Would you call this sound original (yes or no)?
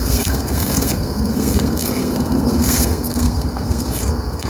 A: no